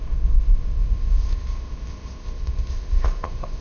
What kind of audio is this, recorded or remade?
remade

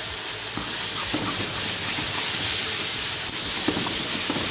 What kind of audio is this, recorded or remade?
recorded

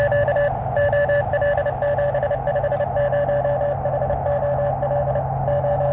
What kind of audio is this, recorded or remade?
recorded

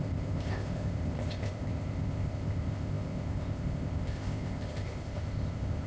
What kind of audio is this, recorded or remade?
remade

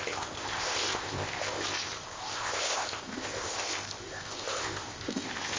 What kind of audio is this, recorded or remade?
remade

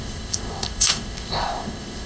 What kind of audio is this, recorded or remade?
remade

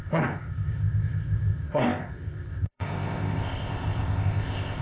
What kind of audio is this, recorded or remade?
remade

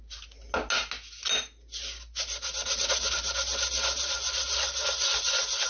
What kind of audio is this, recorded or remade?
recorded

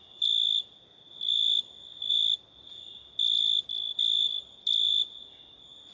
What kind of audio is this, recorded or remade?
recorded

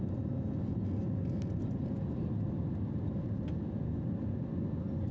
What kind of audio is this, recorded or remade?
recorded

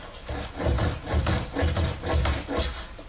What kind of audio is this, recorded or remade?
recorded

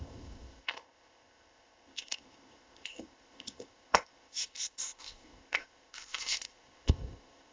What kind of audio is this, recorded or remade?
remade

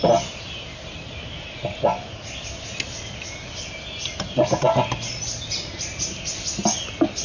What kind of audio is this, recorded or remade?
recorded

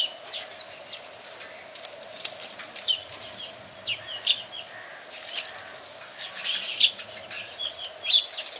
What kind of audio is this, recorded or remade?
recorded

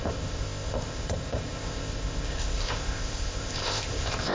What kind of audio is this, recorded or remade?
remade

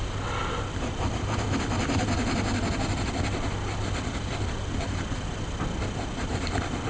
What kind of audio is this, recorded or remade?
recorded